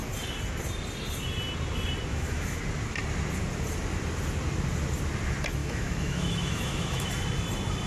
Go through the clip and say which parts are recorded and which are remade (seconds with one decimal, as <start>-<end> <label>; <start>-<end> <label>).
0.0-2.1 recorded; 2.1-2.6 remade; 2.6-5.6 recorded; 5.6-7.1 remade; 7.1-7.9 recorded